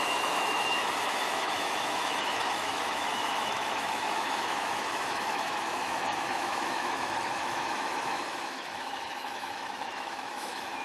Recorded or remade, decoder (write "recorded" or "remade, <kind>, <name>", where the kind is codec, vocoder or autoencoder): remade, autoencoder, DAC-VAE